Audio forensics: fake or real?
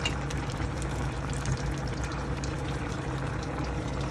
fake